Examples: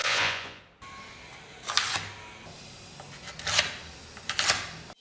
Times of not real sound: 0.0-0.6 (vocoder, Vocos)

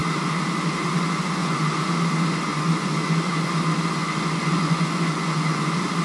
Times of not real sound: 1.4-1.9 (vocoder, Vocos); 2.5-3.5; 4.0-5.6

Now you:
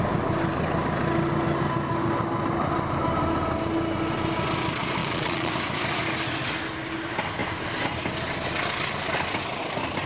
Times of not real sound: 5.0-5.5 (vocoder, Vocos)

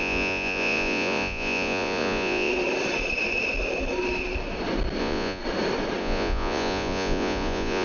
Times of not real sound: 0.0-2.5 (vocoder, Vocos); 5.0-5.4; 6.0-7.8